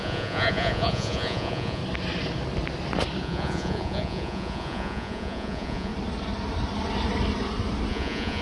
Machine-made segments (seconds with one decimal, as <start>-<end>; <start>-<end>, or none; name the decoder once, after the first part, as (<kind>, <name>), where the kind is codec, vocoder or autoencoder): 0.0-1.8 (vocoder, Vocos); 3.2-5.9; 7.9-8.4